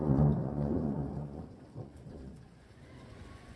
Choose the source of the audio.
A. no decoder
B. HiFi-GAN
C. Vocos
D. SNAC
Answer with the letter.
C